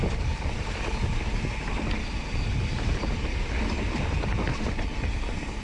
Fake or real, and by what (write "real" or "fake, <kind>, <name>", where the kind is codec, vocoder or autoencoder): real